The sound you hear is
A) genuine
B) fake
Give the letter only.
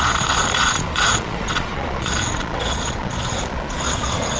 B